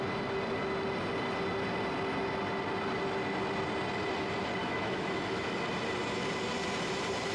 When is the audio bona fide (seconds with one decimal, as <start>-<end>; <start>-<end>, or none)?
0.0-4.6; 5.5-7.3